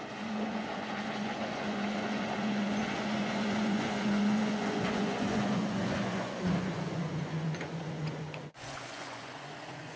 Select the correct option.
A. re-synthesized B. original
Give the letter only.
A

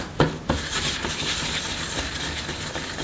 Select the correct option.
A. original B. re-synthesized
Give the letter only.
A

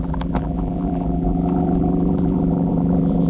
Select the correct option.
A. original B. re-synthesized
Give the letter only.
B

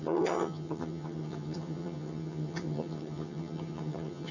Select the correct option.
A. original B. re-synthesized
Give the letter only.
B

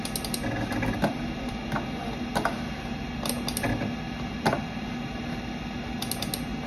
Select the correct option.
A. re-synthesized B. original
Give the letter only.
B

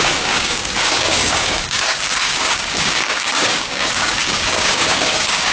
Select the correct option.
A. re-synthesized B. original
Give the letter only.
A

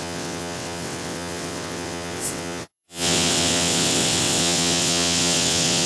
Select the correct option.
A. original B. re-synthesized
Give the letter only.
B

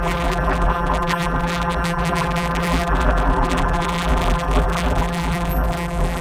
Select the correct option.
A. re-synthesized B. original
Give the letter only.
A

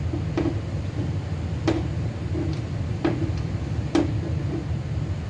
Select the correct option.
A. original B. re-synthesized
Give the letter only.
B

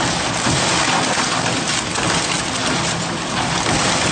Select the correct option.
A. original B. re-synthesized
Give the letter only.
A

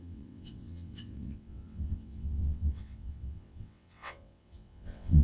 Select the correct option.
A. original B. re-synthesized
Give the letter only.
B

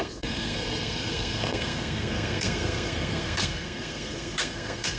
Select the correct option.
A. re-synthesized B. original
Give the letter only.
A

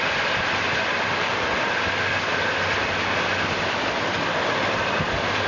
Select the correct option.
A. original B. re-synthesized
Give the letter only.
B